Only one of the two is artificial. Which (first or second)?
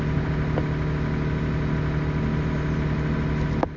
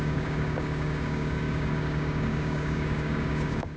second